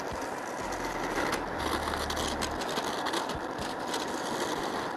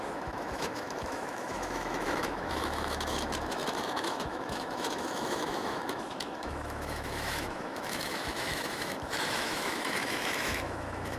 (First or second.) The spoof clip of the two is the second